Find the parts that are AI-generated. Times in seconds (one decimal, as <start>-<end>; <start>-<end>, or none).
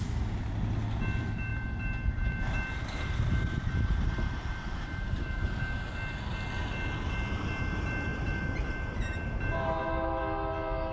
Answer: 1.5-5.6; 8.1-10.2